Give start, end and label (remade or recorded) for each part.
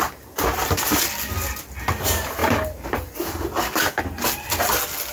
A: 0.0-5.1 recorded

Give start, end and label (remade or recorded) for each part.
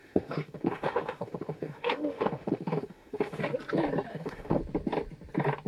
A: 0.0-3.4 remade; 3.4-4.1 recorded; 4.1-4.6 remade; 4.6-5.7 recorded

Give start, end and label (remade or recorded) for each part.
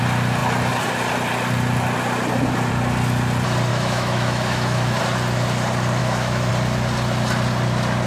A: 0.0-3.7 recorded; 3.7-5.0 remade; 5.0-6.0 recorded; 6.0-6.5 remade; 6.5-8.1 recorded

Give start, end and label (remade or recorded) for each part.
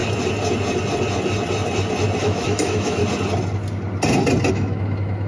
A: 0.0-2.2 recorded; 2.2-3.0 remade; 3.0-4.5 recorded; 4.5-5.3 remade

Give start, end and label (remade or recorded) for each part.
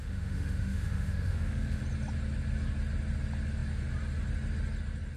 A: 0.0-1.8 remade; 1.8-5.2 recorded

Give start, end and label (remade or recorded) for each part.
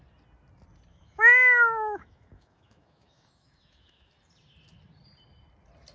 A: 0.0-0.9 recorded; 0.9-4.1 remade; 4.1-5.9 recorded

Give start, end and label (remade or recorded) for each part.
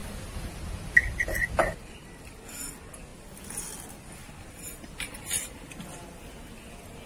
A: 0.0-7.1 recorded